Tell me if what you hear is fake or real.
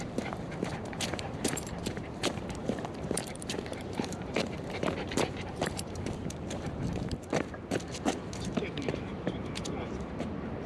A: fake